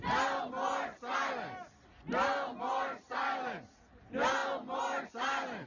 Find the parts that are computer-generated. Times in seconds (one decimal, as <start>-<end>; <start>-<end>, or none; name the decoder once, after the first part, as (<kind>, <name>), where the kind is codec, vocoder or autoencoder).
none